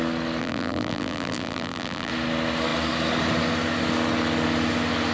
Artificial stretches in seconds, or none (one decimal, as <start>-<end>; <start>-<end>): 0.4-2.1